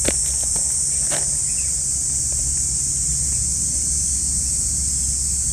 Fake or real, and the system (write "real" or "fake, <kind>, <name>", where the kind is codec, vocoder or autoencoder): real